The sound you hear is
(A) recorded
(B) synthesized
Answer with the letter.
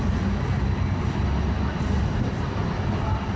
A